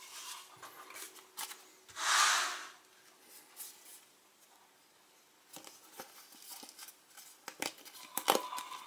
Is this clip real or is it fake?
real